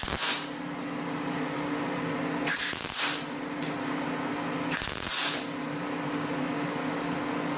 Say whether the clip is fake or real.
real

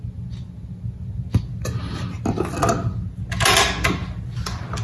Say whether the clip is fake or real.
real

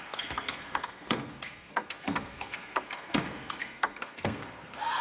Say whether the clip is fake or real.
fake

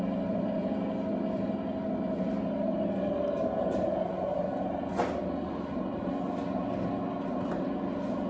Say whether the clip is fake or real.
real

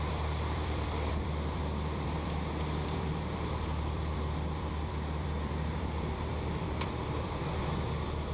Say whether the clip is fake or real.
fake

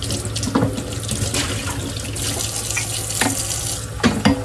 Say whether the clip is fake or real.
real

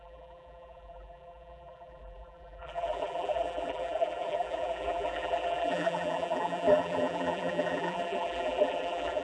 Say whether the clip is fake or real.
fake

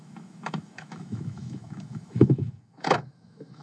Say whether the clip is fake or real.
fake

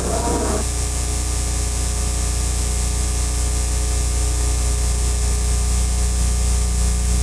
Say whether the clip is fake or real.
real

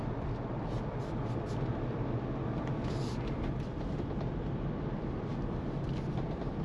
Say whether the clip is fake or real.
real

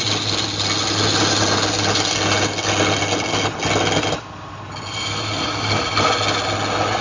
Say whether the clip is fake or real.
real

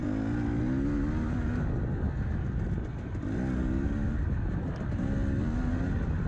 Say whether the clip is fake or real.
real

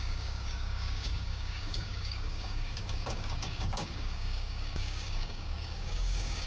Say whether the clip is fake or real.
fake